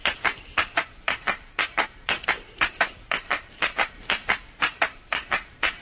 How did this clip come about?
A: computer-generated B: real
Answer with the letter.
A